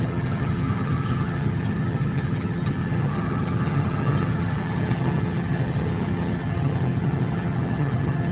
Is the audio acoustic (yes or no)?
no